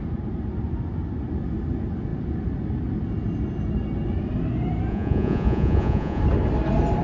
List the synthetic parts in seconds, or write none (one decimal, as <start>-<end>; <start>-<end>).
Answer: 4.9-6.2